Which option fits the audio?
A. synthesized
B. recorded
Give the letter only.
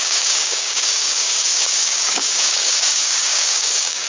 A